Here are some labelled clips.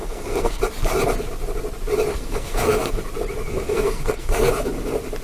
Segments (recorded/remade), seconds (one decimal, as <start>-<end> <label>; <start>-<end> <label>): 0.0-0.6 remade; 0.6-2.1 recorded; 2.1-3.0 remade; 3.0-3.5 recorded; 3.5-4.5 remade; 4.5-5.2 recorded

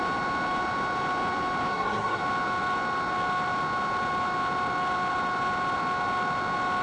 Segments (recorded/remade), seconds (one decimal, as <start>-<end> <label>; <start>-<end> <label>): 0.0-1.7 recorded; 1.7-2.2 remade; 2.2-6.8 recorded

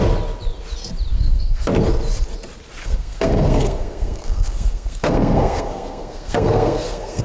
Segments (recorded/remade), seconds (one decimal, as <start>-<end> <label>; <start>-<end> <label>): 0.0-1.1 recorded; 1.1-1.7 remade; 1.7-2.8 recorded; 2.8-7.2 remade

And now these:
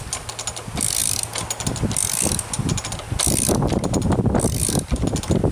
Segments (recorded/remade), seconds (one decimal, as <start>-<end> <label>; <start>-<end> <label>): 0.0-5.5 recorded

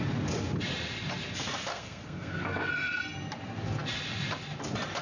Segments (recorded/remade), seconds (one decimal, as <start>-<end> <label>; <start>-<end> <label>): 0.0-1.7 recorded; 1.7-2.7 remade; 2.7-5.0 recorded

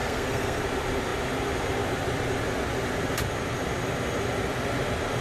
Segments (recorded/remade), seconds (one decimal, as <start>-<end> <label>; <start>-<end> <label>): 0.0-0.6 remade; 0.6-5.2 recorded